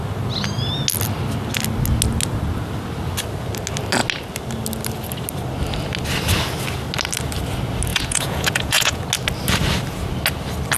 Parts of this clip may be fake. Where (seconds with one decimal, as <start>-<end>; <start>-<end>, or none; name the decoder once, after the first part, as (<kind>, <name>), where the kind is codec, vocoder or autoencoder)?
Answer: 7.9-9.0 (vocoder, Vocos)

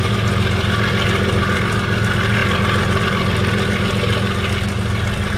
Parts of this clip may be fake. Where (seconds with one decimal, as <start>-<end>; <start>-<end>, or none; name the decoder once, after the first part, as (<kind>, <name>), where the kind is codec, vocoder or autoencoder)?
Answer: none

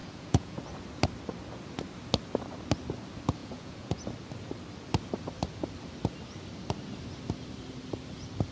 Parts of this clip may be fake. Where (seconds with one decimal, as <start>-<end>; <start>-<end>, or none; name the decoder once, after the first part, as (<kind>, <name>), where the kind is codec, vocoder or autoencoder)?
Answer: 0.0-0.6 (vocoder, Vocos); 3.4-4.0

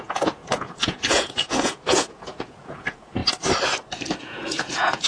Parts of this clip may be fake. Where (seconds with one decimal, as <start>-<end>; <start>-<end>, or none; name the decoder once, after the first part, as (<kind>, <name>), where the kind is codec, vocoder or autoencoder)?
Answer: 0.0-3.2 (vocoder, Vocos); 4.2-5.1

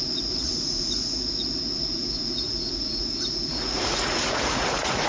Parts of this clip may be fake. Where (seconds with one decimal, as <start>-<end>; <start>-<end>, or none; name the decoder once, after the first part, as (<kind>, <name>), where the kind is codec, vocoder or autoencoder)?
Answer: 0.0-0.8 (vocoder, Vocos); 1.8-5.1

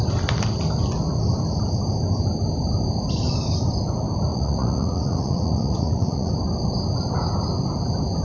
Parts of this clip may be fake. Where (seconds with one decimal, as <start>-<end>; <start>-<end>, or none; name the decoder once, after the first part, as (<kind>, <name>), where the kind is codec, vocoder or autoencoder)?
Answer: 4.3-6.3 (vocoder, Vocos)